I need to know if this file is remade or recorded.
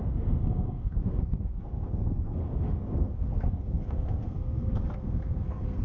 remade